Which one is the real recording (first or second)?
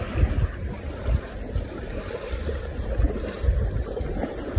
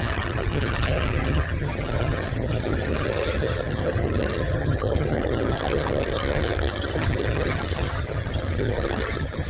first